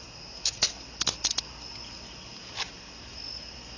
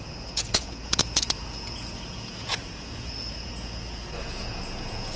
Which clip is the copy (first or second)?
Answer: second